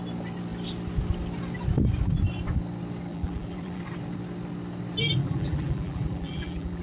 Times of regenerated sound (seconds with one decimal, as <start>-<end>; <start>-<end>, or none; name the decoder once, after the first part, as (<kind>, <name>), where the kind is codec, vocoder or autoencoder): 3.1-3.8 (vocoder, BigVGAN v2); 5.2-6.8